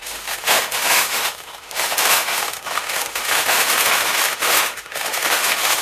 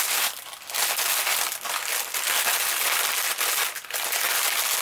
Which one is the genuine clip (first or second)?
second